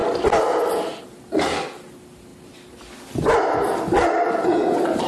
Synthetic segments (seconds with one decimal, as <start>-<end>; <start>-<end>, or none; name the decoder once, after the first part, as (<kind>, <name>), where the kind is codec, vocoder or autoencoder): none